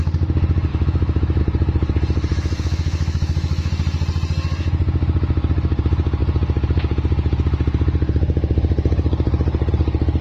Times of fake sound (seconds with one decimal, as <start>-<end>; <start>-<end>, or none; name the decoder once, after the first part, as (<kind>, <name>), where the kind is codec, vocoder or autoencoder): 0.7-1.4 (autoencoder, DAC-VAE); 2.3-3.7